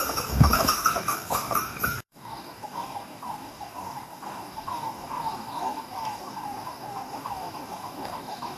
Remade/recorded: remade